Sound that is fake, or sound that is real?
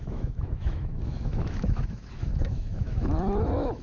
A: fake